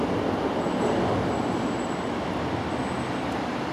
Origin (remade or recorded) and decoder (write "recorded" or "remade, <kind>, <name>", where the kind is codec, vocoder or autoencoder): recorded